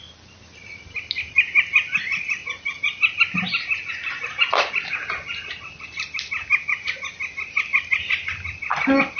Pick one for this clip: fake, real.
real